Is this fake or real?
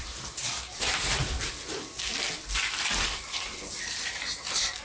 real